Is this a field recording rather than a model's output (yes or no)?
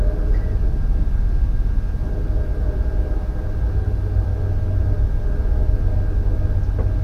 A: yes